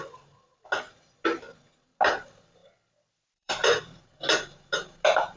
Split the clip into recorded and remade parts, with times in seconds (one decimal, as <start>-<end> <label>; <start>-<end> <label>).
0.0-2.6 recorded; 2.6-4.0 remade; 4.0-5.4 recorded